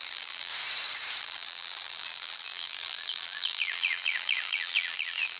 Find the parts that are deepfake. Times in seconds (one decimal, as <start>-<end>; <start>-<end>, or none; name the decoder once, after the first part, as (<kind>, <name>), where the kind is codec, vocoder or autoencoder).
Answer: 0.0-0.5 (vocoder, BigVGAN v2); 1.2-5.4